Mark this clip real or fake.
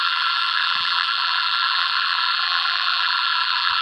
fake